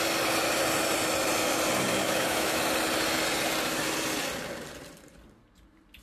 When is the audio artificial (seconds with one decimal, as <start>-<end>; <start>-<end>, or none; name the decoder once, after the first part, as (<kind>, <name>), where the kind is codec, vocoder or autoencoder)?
1.9-2.6 (autoencoder, DAC-VAE)